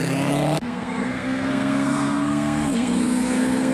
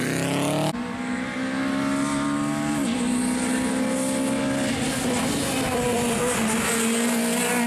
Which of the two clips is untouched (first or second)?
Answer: second